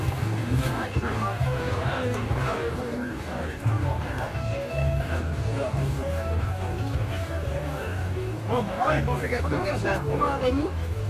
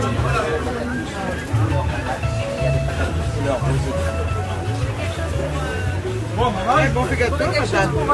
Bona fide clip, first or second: second